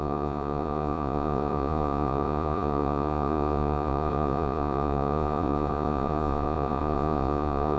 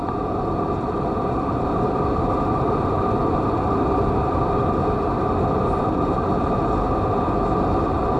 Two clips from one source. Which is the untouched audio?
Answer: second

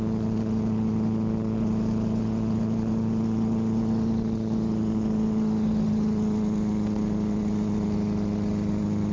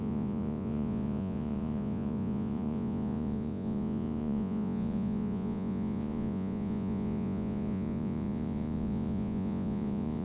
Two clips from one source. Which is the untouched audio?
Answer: first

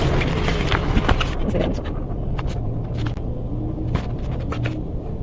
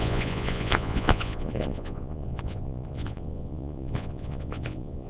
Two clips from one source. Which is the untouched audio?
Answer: first